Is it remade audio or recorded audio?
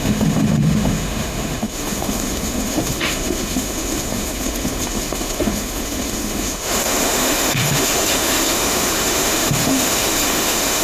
remade